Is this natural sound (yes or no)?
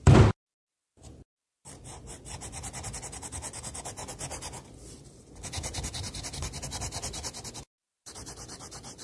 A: yes